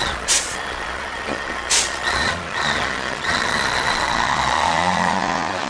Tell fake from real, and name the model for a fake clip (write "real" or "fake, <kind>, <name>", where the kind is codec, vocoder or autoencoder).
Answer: fake, vocoder, Vocos